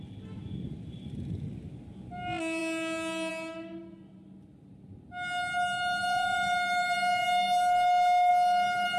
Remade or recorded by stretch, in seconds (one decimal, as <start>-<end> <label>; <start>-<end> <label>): 0.0-9.0 recorded